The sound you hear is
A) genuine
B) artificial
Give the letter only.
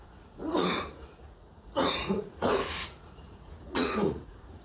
B